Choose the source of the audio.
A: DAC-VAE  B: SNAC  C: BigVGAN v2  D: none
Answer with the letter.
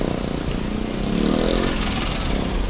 D